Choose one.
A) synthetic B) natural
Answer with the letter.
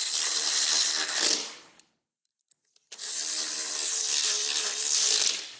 A